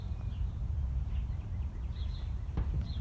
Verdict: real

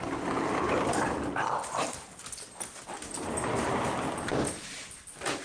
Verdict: real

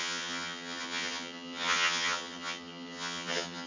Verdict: fake